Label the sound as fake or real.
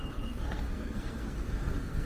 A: fake